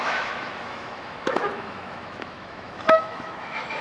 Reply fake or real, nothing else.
fake